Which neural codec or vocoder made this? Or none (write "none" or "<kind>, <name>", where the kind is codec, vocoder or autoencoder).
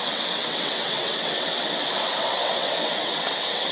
vocoder, WaveNeXt